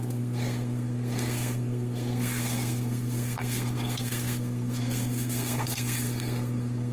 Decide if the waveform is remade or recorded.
remade